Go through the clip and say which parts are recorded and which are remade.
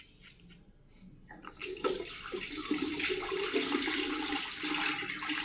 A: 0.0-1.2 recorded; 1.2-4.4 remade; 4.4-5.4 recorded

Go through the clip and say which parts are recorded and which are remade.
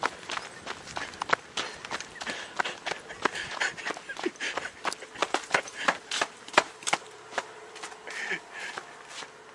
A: 0.0-5.2 recorded; 5.2-7.7 remade; 7.7-9.5 recorded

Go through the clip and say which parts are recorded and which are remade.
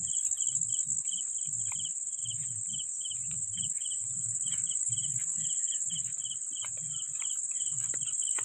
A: 0.0-2.2 recorded; 2.2-6.1 remade; 6.1-8.4 recorded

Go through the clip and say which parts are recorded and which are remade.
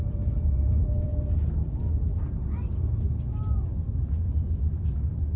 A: 0.0-1.1 remade; 1.1-4.3 recorded; 4.3-5.4 remade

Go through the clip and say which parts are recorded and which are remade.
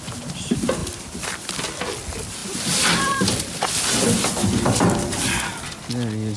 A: 0.0-0.8 recorded; 0.8-1.8 remade; 1.8-6.4 recorded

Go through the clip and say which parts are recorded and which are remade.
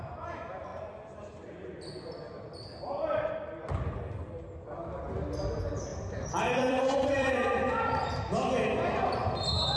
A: 0.0-0.7 recorded; 0.7-3.3 remade; 3.3-5.9 recorded; 5.9-8.1 remade; 8.1-9.8 recorded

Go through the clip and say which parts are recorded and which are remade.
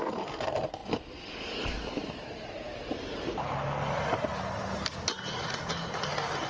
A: 0.0-0.8 recorded; 0.8-3.4 remade; 3.4-6.5 recorded